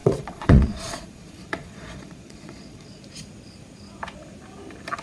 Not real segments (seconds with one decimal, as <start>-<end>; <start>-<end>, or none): 0.0-3.0